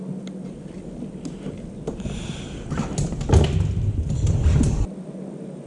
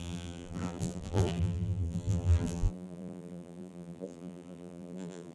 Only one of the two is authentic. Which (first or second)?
first